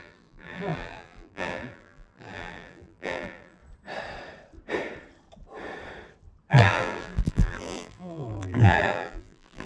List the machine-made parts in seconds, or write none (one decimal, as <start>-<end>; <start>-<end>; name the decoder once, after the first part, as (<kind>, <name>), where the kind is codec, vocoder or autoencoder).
0.0-3.6 (vocoder, BigVGAN v2); 6.5-9.7